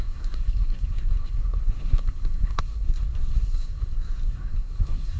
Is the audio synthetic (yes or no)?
yes